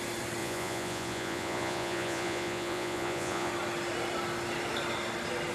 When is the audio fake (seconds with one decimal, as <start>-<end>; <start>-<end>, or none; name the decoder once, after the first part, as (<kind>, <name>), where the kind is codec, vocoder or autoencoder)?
0.4-3.5 (vocoder, Vocos)